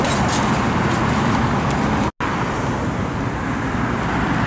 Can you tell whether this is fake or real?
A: real